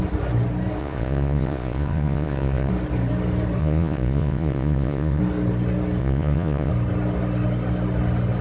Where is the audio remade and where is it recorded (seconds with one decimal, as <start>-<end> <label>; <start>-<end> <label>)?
0.0-0.8 recorded; 0.8-2.7 remade; 2.7-3.6 recorded; 3.6-5.2 remade; 5.2-6.0 recorded; 6.0-6.7 remade; 6.7-8.4 recorded